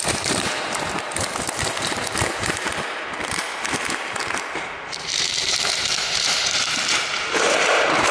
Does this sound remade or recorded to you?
remade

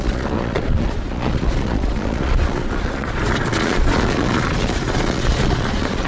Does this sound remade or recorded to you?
remade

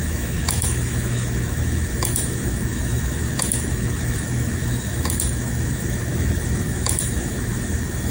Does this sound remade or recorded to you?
remade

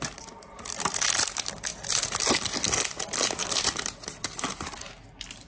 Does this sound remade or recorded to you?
recorded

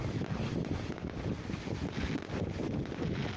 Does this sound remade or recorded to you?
recorded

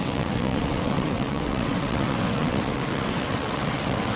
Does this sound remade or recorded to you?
remade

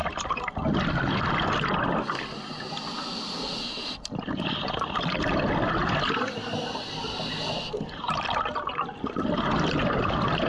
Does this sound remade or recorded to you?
recorded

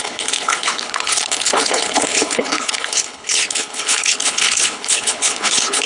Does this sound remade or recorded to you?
remade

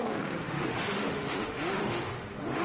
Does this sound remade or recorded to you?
remade